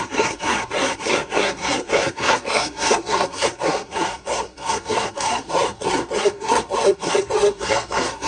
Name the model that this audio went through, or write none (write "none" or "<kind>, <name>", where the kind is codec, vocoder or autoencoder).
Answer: codec, SNAC